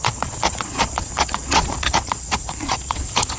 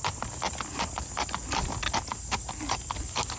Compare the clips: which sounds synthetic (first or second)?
first